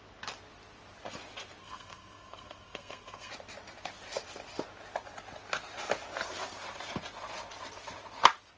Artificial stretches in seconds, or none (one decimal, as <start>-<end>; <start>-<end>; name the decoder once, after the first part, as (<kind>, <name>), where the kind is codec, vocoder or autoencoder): 1.6-3.3 (codec, SNAC)